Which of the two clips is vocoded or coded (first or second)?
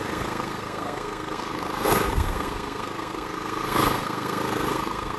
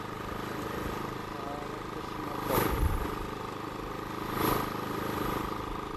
first